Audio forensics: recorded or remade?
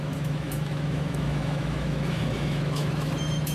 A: remade